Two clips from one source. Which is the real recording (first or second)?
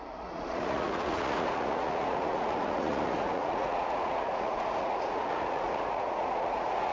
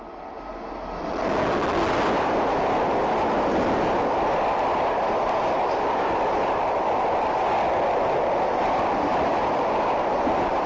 second